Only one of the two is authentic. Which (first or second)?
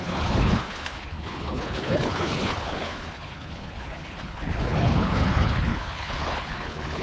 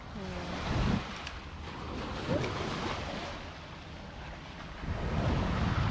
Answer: second